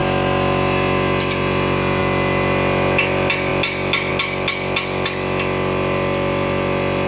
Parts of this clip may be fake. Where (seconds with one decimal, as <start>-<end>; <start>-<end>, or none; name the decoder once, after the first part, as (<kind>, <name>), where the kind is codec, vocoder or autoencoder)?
none